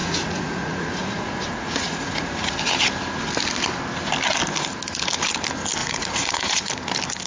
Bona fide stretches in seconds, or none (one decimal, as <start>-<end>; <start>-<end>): 2.5-5.8; 6.7-7.3